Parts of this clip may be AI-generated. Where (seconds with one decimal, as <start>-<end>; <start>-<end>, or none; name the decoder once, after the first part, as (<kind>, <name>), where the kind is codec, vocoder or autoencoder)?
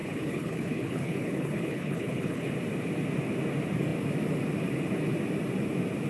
0.0-2.5 (codec, HILCodec)